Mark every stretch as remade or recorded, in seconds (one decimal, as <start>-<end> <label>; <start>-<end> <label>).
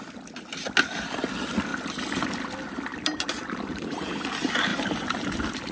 0.0-2.9 recorded; 2.9-4.1 remade; 4.1-4.7 recorded; 4.7-5.7 remade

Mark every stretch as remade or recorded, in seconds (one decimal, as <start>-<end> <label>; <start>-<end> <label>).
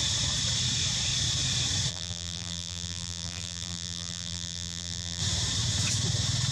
0.0-1.9 recorded; 1.9-5.2 remade; 5.2-6.5 recorded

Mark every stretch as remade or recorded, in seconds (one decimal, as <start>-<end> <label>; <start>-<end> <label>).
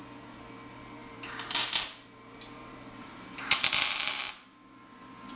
0.0-1.0 recorded; 1.0-4.2 remade; 4.2-5.4 recorded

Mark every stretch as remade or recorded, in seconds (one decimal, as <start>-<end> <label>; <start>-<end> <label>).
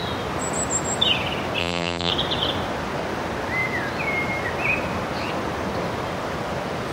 0.0-1.6 recorded; 1.6-2.1 remade; 2.1-6.9 recorded